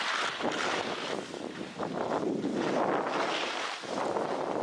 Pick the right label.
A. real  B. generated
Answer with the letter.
A